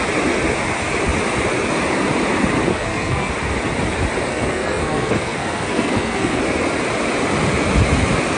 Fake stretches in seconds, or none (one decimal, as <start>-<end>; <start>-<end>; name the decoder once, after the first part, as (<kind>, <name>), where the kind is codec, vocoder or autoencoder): 2.7-3.3 (codec, SNAC); 4.3-6.4

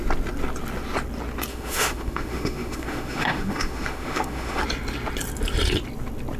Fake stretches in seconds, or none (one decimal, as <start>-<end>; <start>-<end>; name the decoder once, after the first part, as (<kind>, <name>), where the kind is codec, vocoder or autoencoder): 1.5-4.6 (autoencoder, DAC-VAE)

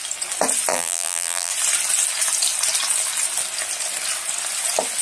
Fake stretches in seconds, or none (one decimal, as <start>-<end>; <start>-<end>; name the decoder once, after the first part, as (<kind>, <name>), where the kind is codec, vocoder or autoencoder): 0.7-1.5 (vocoder, BigVGAN v2)

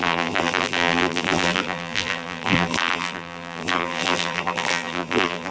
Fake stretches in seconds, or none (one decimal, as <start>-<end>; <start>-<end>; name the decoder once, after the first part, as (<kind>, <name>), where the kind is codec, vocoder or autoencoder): 0.0-5.5 (vocoder, BigVGAN v2)

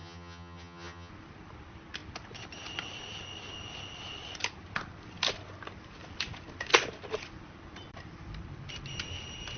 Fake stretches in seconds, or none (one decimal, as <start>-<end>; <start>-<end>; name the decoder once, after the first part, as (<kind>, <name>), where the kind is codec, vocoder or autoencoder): 0.0-1.1 (vocoder, HiFi-GAN)